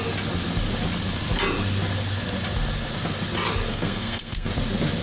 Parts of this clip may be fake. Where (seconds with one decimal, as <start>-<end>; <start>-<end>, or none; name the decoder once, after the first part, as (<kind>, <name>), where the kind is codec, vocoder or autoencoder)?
3.7-4.5 (codec, SNAC)